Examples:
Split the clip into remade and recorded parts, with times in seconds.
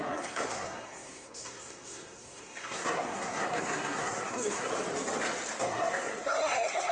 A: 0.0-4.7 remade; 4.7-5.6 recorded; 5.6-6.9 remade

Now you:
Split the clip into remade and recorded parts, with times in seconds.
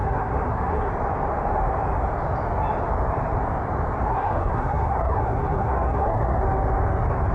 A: 0.0-0.9 remade; 0.9-4.1 recorded; 4.1-6.4 remade; 6.4-7.3 recorded